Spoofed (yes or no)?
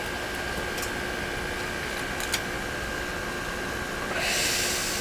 no